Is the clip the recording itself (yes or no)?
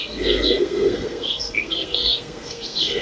no